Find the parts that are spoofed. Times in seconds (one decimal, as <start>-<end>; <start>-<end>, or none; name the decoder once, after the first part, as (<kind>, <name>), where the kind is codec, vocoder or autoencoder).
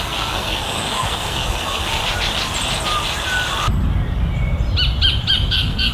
0.0-2.0 (codec, SNAC); 5.5-5.9